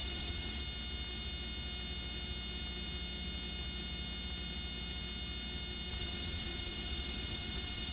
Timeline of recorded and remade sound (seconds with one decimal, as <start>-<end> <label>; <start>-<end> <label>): 0.0-0.6 remade; 0.6-5.9 recorded; 5.9-7.9 remade